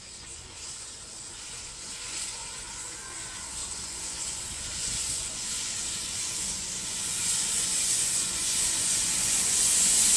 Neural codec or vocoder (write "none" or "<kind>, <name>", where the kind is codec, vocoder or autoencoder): vocoder, Vocos